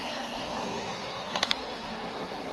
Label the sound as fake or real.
fake